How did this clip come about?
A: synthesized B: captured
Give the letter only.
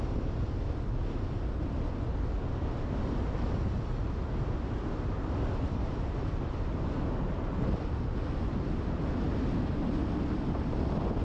B